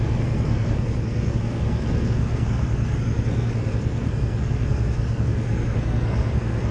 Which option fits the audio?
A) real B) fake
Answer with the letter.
B